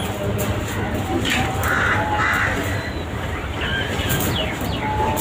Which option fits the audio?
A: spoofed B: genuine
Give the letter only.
B